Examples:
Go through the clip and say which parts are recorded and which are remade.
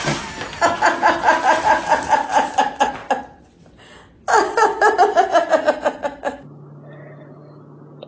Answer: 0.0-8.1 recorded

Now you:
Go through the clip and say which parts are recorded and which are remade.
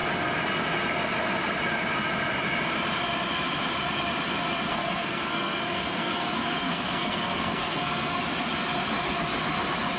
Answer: 0.0-4.7 recorded; 4.7-8.2 remade; 8.2-10.0 recorded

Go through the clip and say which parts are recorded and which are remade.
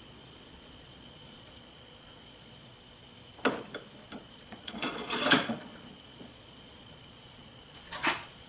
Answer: 0.0-2.7 remade; 2.7-4.3 recorded; 4.3-8.5 remade